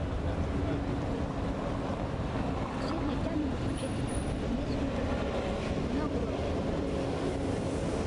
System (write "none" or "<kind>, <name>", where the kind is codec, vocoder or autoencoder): vocoder, BigVGAN v2